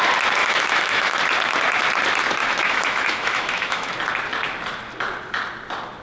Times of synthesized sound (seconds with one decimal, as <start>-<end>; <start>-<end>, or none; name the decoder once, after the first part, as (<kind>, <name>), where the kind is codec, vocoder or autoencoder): 0.4-1.2 (autoencoder, DAC-VAE); 2.4-3.9